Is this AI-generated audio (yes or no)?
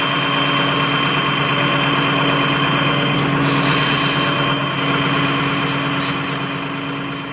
no